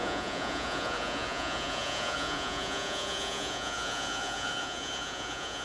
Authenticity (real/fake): fake